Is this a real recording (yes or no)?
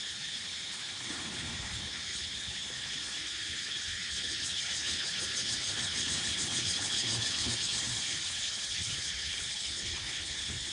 no